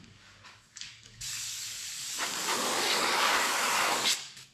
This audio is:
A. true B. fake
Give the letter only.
B